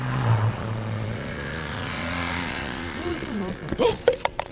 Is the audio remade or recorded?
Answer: remade